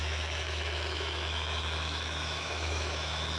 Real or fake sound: fake